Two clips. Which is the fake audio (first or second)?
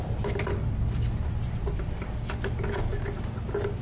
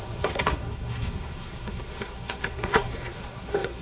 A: second